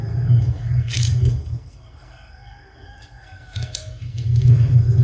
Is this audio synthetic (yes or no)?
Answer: yes